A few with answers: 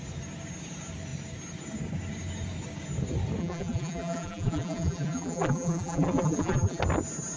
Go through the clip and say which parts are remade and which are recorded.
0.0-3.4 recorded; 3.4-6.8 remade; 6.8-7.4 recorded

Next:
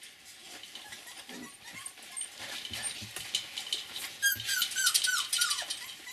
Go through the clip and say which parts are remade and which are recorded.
0.0-6.1 recorded

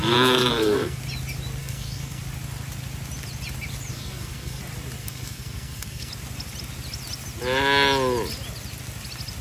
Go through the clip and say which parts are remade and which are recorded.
0.0-1.0 remade; 1.0-1.6 recorded; 1.6-2.2 remade; 2.2-3.9 recorded; 3.9-4.6 remade; 4.6-5.0 recorded; 5.0-6.1 remade; 6.1-9.4 recorded

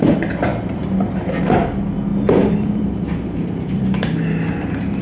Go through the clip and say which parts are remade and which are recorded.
0.0-0.5 recorded; 0.5-1.4 remade; 1.4-2.1 recorded; 2.1-3.8 remade; 3.8-5.0 recorded